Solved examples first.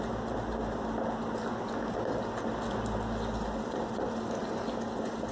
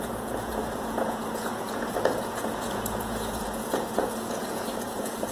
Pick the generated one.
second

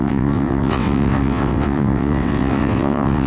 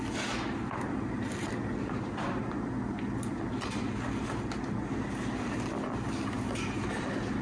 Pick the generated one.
first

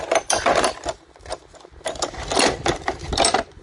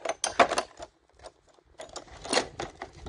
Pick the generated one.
first